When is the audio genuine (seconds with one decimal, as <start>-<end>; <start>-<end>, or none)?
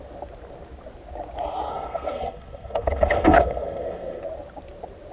0.0-1.7; 4.2-5.1